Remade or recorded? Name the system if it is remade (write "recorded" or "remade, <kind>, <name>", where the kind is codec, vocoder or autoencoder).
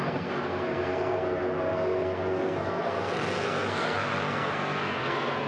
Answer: remade, codec, SNAC